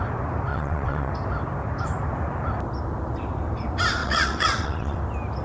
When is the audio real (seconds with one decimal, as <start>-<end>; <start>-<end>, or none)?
0.0-0.5; 1.1-4.0; 5.0-5.4